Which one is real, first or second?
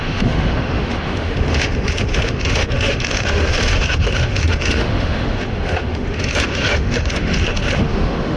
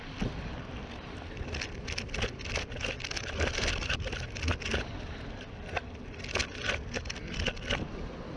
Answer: second